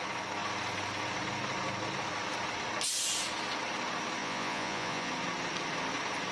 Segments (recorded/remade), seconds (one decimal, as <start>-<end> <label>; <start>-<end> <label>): 0.0-4.2 recorded; 4.2-5.1 remade; 5.1-6.3 recorded